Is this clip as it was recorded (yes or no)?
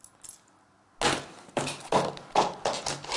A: yes